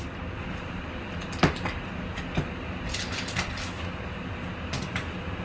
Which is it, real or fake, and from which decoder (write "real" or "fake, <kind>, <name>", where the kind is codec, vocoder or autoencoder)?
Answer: real